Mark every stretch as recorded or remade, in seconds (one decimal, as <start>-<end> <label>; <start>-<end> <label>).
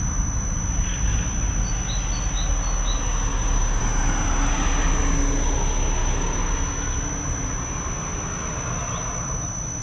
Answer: 0.0-3.3 recorded; 3.3-3.8 remade; 3.8-6.0 recorded; 6.0-6.5 remade; 6.5-9.8 recorded